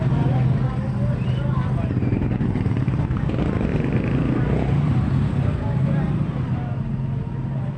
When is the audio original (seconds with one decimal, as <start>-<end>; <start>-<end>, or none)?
0.0-7.8